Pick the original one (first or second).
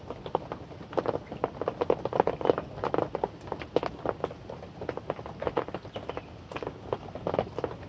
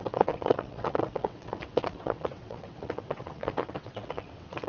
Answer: first